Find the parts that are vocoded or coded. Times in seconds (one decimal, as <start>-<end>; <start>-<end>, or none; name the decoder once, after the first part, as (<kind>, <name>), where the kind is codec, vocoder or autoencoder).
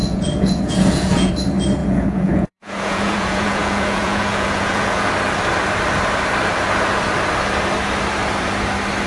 0.0-1.3 (vocoder, Vocos); 1.8-5.1